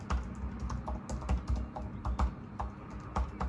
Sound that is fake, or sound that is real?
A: real